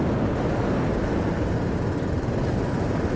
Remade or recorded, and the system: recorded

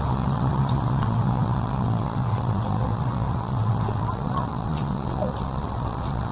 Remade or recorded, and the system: remade, vocoder, WaveNeXt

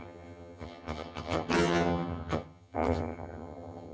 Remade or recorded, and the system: remade, vocoder, HiFi-GAN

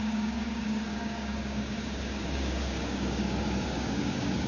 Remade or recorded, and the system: remade, codec, DAC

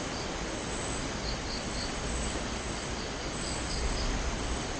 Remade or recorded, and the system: recorded